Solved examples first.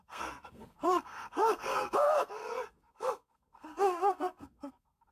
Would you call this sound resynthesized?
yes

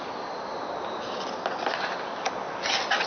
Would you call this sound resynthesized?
no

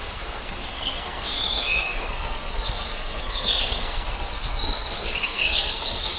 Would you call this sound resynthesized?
yes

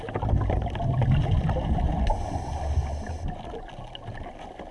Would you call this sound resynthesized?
no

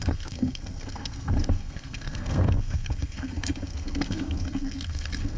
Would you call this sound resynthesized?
yes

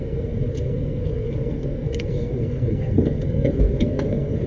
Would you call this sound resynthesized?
yes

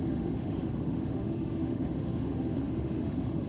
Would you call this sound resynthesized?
yes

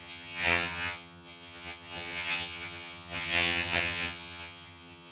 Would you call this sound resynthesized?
yes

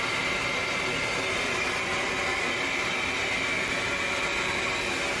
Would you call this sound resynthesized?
no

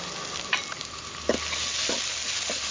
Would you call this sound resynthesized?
no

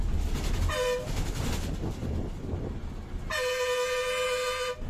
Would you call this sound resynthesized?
no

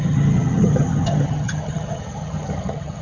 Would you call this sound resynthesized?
yes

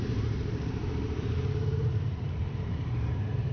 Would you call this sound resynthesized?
yes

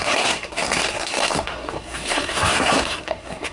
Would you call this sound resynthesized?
yes